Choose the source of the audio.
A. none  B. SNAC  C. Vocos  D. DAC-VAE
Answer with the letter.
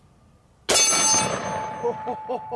A